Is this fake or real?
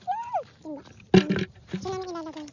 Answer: real